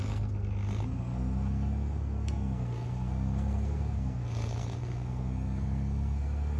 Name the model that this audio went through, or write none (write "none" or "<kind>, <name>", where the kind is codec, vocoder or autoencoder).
codec, SNAC